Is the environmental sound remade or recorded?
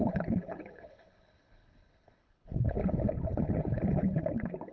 remade